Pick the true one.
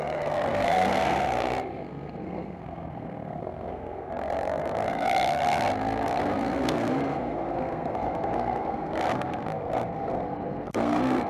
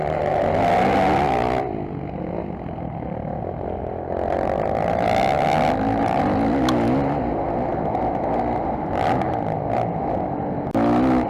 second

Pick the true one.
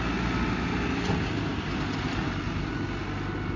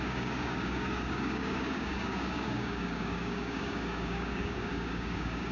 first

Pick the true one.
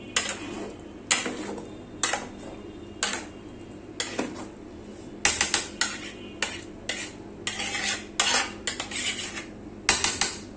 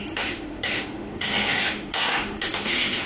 first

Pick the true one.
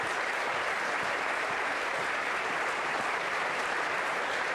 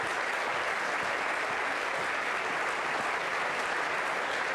second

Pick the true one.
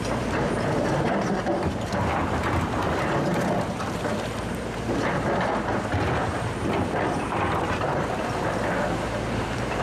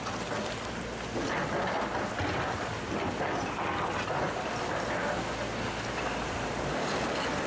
second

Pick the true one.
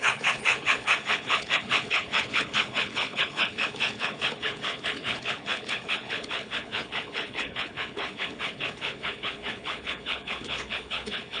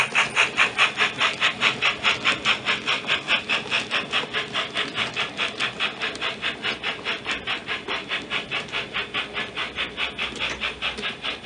second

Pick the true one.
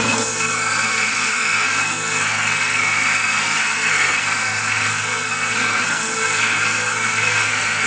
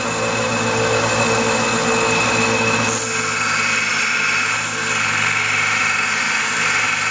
second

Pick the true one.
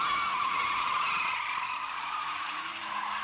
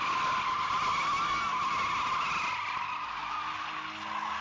second